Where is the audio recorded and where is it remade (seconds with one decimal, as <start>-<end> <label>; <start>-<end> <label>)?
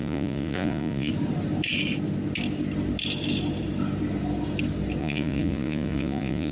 0.0-1.1 remade; 1.1-5.0 recorded; 5.0-6.5 remade